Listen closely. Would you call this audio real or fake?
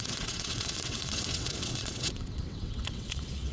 fake